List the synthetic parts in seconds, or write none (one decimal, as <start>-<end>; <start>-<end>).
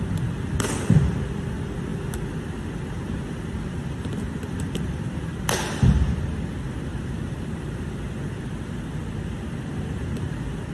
6.9-7.9